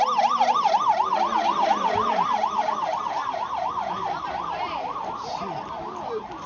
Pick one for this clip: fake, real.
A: real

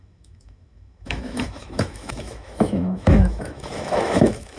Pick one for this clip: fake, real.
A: fake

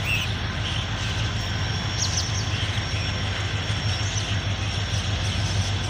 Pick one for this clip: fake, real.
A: real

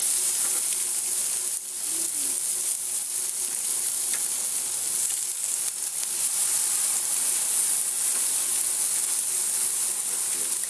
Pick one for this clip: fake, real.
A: real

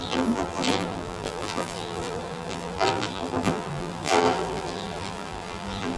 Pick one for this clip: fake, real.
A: fake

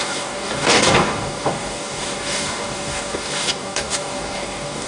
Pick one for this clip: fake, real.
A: fake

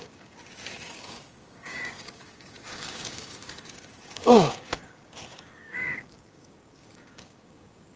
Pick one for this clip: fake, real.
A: fake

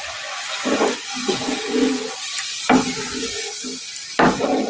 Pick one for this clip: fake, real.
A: real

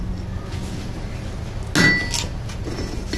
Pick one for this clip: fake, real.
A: real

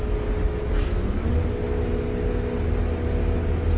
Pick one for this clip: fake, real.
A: real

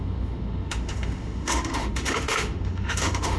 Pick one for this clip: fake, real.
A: fake